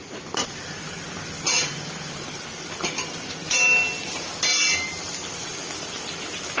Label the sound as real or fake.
real